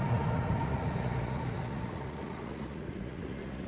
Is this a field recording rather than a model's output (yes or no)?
no